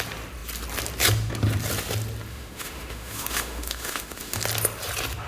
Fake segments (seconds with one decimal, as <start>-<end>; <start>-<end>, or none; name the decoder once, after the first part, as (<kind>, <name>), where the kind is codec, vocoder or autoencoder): 2.3-4.4 (autoencoder, DAC-VAE)